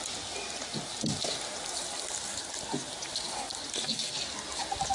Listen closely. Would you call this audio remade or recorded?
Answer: recorded